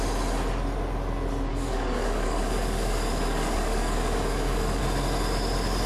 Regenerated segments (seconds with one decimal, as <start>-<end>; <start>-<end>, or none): 1.5-4.8